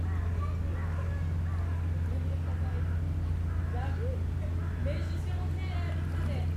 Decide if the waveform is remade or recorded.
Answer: recorded